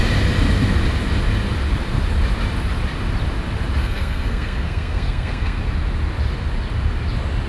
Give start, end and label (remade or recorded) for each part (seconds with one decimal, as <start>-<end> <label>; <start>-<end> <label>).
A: 0.0-3.8 recorded; 3.8-5.6 remade; 5.6-7.5 recorded